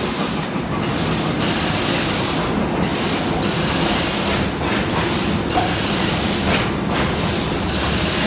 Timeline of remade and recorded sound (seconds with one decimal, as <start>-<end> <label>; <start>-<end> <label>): 0.0-8.3 recorded